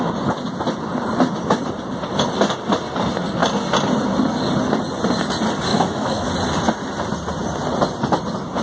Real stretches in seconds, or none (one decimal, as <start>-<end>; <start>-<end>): 0.0-5.7; 6.3-8.6